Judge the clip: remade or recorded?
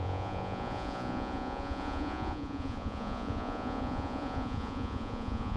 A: remade